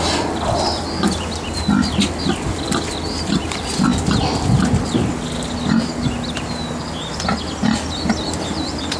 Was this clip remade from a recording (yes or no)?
no